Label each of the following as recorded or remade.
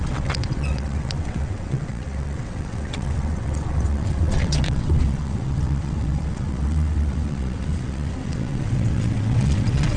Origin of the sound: remade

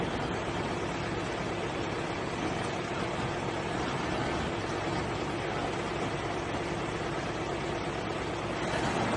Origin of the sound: recorded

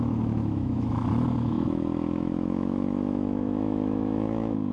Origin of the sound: remade